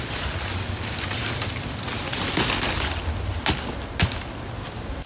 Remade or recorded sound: recorded